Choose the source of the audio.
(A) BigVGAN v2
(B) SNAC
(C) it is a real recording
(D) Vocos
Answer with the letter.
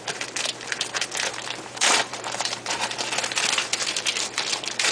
A